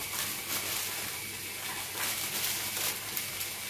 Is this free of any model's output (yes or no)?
yes